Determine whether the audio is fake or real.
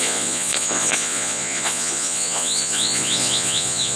fake